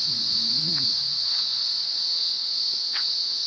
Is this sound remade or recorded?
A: remade